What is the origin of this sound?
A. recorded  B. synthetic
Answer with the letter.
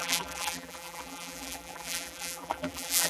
B